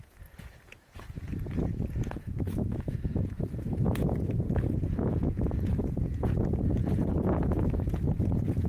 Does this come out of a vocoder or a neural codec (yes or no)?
yes